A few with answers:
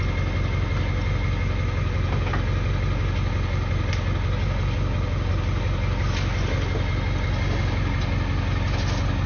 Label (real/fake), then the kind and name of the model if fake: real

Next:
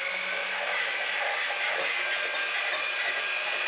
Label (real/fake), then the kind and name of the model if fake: real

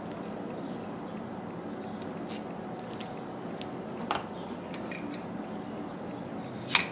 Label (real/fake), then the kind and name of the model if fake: real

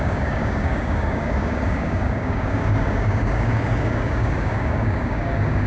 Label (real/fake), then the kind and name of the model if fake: fake, codec, DAC